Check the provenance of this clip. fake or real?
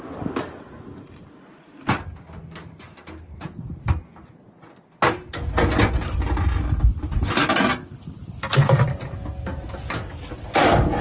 real